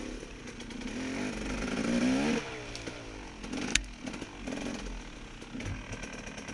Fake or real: real